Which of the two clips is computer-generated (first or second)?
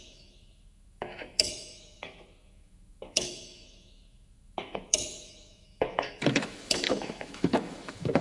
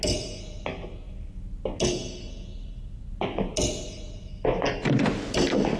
first